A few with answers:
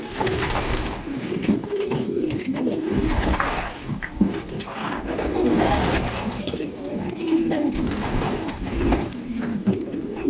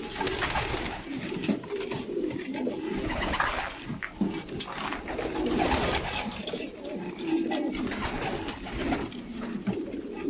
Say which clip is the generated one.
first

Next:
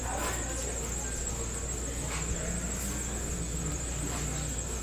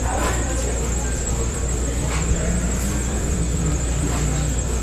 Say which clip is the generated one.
second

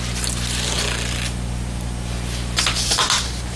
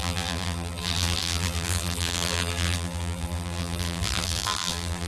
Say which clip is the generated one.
second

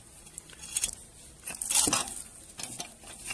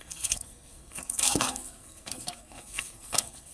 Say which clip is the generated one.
second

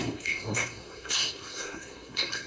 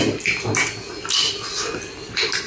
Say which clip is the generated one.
first